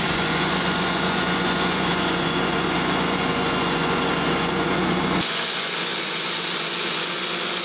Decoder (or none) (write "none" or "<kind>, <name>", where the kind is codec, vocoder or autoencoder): vocoder, Vocos